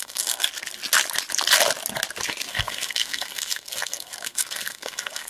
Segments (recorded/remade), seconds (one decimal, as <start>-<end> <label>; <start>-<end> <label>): 0.0-0.5 remade; 0.5-2.5 recorded; 2.5-5.3 remade